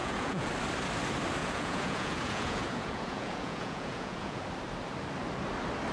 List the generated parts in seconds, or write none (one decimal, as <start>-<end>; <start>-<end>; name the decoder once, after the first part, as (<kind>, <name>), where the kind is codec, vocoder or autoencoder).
0.0-0.5 (vocoder, Vocos); 1.4-4.4